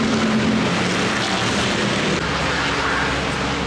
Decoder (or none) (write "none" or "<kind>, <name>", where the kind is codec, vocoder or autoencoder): none